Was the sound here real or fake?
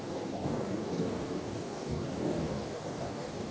fake